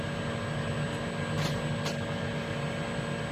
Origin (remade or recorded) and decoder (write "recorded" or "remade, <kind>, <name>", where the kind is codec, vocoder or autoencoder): recorded